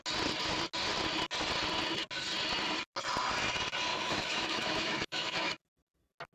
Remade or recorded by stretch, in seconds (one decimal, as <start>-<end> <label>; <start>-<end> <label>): 0.0-3.9 recorded; 3.9-5.5 remade; 5.5-6.3 recorded